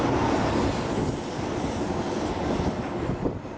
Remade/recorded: recorded